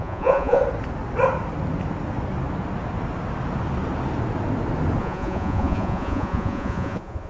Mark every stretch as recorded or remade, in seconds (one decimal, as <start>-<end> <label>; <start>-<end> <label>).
0.0-0.6 remade; 0.6-5.0 recorded; 5.0-7.3 remade